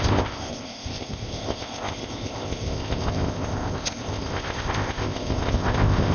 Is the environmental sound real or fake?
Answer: fake